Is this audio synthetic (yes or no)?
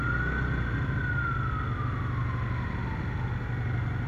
no